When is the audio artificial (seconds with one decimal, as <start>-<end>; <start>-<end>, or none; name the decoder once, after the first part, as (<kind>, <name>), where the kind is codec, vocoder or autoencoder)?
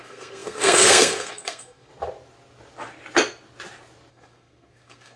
0.0-1.9 (codec, SNAC); 4.1-5.2